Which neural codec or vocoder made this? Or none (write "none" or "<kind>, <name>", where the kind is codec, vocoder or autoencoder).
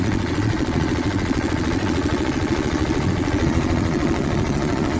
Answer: vocoder, Vocos